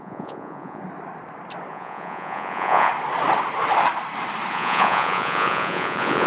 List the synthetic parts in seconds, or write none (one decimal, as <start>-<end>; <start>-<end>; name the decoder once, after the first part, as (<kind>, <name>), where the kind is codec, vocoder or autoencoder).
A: 0.0-0.8 (vocoder, Vocos); 1.7-2.9; 4.5-6.3